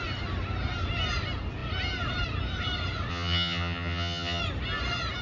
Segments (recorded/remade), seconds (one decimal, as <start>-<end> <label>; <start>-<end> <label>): 0.0-3.1 recorded; 3.1-4.4 remade; 4.4-5.2 recorded